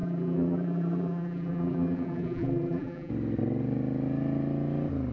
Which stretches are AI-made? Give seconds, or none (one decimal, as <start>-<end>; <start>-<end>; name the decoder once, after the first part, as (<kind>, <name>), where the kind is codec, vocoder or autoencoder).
0.0-3.1 (vocoder, BigVGAN v2)